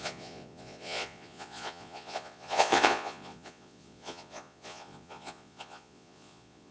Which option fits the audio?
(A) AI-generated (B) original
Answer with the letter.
A